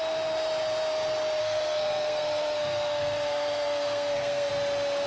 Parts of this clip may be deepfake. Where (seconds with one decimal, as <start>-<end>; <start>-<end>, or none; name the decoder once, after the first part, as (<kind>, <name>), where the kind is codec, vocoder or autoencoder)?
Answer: 1.4-4.5 (codec, SNAC)